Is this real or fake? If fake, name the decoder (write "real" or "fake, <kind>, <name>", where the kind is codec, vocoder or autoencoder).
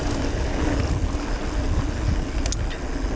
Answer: real